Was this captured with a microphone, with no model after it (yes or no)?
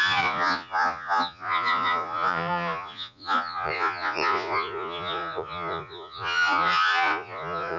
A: no